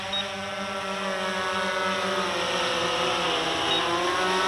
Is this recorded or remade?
recorded